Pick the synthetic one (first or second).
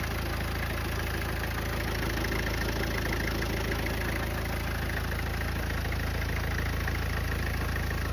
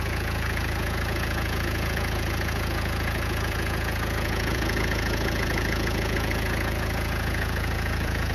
second